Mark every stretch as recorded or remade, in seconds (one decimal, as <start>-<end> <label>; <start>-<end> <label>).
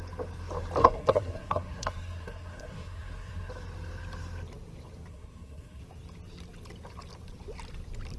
0.0-0.8 recorded; 0.8-3.5 remade; 3.5-5.1 recorded; 5.1-5.8 remade; 5.8-8.2 recorded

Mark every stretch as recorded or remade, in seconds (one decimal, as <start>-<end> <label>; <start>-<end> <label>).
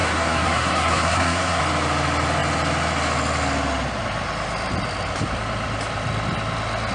0.0-1.6 remade; 1.6-6.9 recorded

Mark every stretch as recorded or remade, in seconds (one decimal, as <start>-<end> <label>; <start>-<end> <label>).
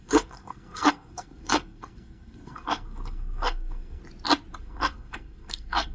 0.0-4.0 remade; 4.0-4.6 recorded; 4.6-5.9 remade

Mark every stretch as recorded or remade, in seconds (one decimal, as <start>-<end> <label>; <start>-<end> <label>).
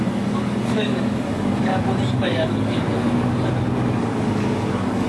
0.0-1.7 remade; 1.7-2.2 recorded; 2.2-2.8 remade; 2.8-4.0 recorded; 4.0-5.1 remade